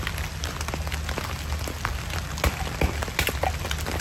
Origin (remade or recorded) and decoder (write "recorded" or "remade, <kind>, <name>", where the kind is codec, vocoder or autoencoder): recorded